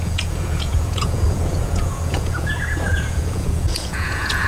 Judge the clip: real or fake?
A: fake